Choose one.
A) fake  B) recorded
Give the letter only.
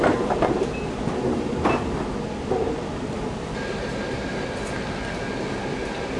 B